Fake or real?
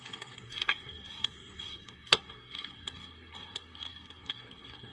fake